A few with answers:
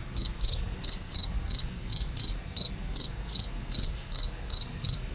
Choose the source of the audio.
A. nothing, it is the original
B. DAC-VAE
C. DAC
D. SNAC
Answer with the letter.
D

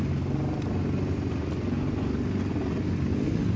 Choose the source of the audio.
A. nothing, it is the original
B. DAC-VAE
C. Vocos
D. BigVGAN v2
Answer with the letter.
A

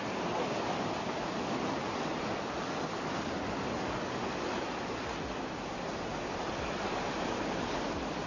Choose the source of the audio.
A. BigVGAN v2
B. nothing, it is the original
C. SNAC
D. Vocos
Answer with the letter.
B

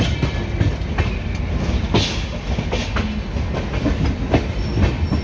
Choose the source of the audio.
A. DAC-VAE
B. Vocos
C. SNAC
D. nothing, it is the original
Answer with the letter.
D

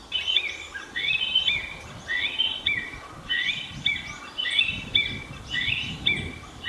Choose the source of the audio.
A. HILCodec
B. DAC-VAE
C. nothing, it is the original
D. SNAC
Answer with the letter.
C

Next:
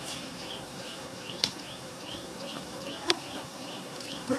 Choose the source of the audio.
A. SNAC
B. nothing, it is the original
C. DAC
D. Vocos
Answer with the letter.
A